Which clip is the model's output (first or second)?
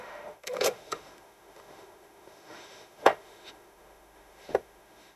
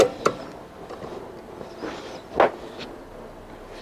first